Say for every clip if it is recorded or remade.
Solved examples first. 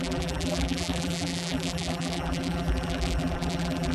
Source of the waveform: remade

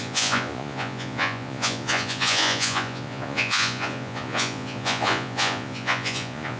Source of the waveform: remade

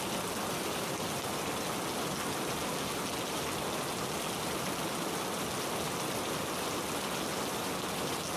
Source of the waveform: recorded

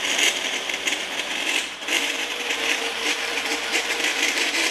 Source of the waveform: remade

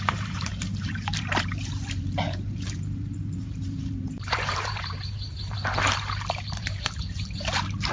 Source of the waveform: remade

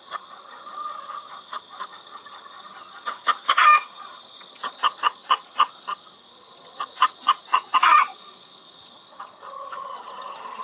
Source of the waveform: remade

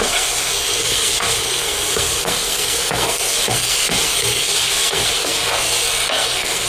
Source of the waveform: remade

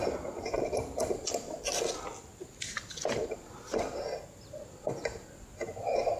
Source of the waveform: recorded